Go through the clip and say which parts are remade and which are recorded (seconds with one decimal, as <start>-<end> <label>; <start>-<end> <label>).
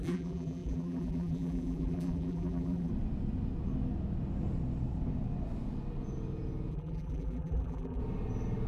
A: 0.0-2.9 remade; 2.9-6.7 recorded; 6.7-8.0 remade; 8.0-8.7 recorded